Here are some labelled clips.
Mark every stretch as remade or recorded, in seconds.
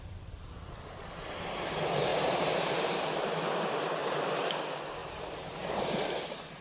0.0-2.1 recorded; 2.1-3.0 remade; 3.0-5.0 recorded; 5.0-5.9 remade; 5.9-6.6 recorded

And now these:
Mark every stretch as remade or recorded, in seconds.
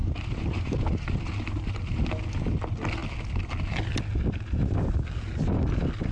0.0-2.0 remade; 2.0-6.1 recorded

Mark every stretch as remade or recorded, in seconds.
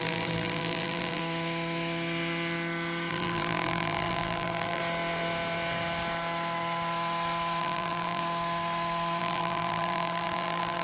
0.0-1.2 remade; 1.2-3.1 recorded; 3.1-4.8 remade; 4.8-7.6 recorded; 7.6-8.2 remade; 8.2-9.2 recorded; 9.2-10.8 remade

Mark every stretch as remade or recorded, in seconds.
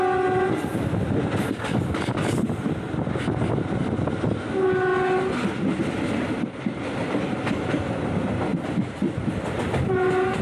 0.0-8.5 recorded; 8.5-9.3 remade; 9.3-10.4 recorded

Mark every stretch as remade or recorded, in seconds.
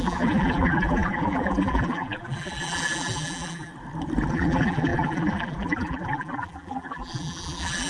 0.0-3.7 remade; 3.7-4.3 recorded; 4.3-7.9 remade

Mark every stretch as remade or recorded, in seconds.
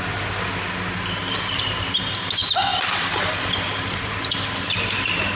0.0-1.2 recorded; 1.2-2.3 remade; 2.3-2.7 recorded; 2.7-5.3 remade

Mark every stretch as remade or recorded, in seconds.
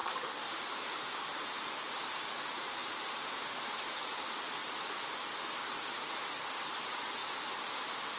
0.0-2.8 remade; 2.8-3.7 recorded; 3.7-4.6 remade; 4.6-6.7 recorded; 6.7-8.2 remade